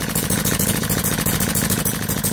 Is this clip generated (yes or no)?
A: yes